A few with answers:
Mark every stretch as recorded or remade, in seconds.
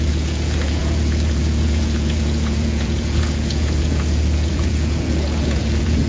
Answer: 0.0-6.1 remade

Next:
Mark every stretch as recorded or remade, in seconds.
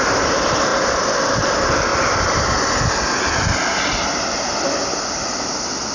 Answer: 0.0-5.9 recorded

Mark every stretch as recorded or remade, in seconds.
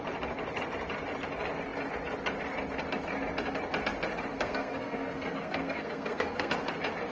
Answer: 0.0-4.3 recorded; 4.3-6.5 remade; 6.5-7.1 recorded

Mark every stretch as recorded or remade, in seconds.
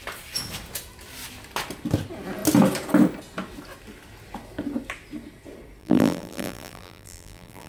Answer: 0.0-5.8 recorded; 5.8-7.7 remade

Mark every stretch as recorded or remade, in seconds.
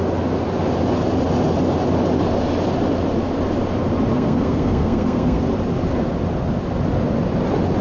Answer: 0.0-4.1 recorded; 4.1-5.4 remade; 5.4-7.8 recorded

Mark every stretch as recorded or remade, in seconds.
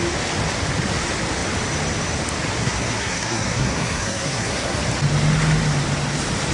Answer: 0.0-2.6 recorded; 2.6-4.8 remade; 4.8-6.5 recorded